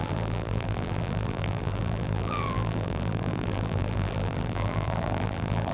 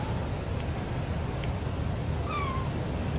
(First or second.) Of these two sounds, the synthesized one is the first